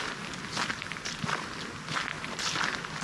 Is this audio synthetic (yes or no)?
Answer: no